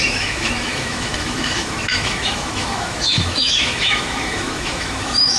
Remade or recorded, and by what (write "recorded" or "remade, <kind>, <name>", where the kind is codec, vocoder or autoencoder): remade, autoencoder, DAC-VAE